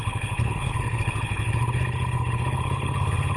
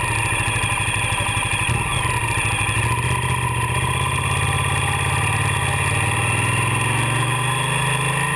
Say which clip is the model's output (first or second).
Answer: first